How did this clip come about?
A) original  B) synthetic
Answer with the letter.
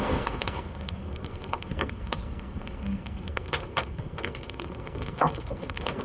B